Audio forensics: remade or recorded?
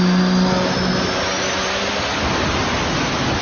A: recorded